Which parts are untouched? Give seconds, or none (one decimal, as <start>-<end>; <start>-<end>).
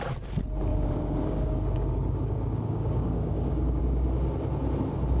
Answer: 0.0-0.7; 3.8-5.2